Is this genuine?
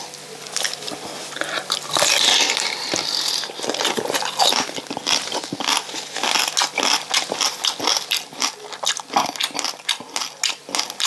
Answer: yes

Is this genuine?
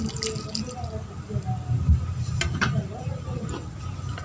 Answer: yes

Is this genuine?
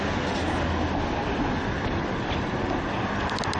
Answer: yes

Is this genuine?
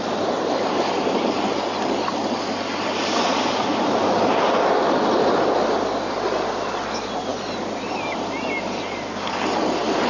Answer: yes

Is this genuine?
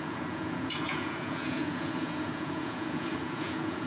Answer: no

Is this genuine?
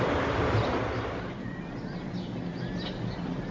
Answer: yes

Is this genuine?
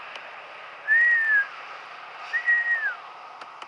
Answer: yes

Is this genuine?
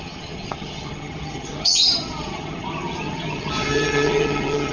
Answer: no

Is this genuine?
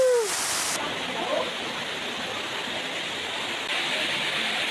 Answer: yes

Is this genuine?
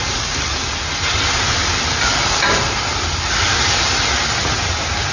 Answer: yes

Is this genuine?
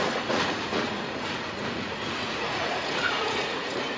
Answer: no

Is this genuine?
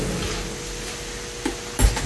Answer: yes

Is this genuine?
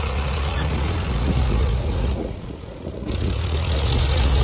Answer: no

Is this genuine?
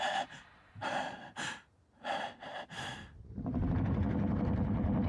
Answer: no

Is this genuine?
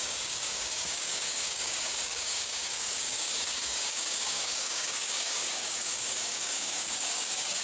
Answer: no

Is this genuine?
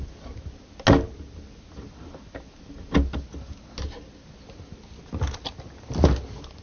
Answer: yes